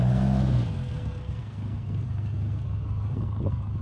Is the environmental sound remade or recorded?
remade